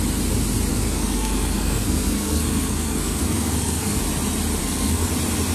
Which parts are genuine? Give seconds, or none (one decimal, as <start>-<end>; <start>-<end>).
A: 0.0-0.7; 4.0-4.6; 5.1-5.5